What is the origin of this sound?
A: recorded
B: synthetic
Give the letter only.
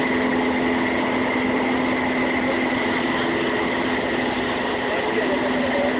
A